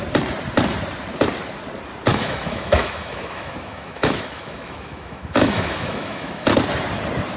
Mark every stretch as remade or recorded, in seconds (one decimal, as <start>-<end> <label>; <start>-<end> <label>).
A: 0.0-2.1 recorded; 2.1-6.5 remade; 6.5-7.4 recorded